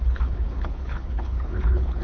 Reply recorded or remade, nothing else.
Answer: remade